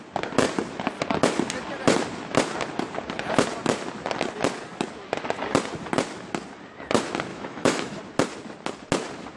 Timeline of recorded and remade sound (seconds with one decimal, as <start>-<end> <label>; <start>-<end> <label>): 0.0-7.3 recorded; 7.3-8.0 remade; 8.0-9.4 recorded